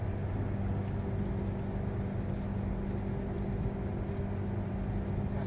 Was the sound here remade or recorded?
recorded